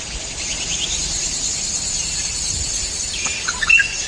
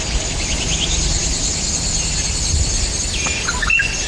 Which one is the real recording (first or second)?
second